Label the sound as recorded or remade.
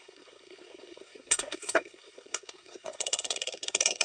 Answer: remade